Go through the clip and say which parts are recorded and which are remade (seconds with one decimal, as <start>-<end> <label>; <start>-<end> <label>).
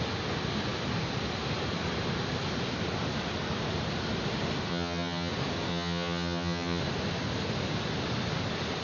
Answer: 0.0-4.7 recorded; 4.7-5.3 remade; 5.3-5.7 recorded; 5.7-6.8 remade; 6.8-8.8 recorded